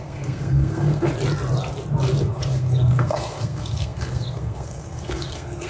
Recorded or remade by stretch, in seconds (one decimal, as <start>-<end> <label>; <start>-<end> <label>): 0.0-1.1 remade; 1.1-2.2 recorded; 2.2-5.7 remade